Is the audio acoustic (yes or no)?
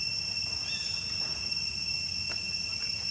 yes